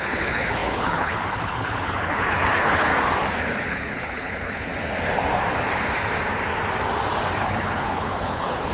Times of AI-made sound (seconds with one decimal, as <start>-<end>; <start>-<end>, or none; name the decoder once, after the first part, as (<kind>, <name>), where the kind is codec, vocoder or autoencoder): 0.0-2.9 (codec, HILCodec); 3.4-4.7; 7.4-8.7